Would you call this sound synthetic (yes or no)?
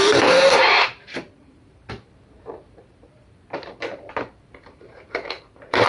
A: yes